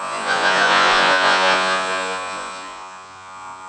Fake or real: fake